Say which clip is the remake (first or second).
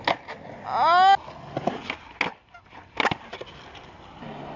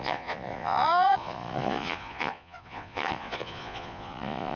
second